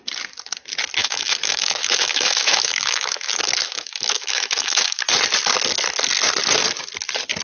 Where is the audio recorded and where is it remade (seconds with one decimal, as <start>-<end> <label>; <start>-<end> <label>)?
0.0-1.0 recorded; 1.0-5.0 remade; 5.0-7.4 recorded